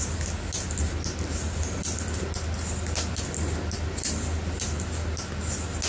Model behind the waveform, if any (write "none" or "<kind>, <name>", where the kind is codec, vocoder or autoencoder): none